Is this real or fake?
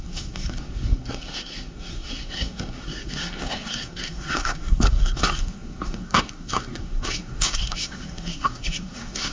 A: fake